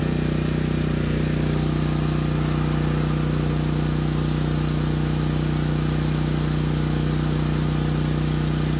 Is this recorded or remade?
recorded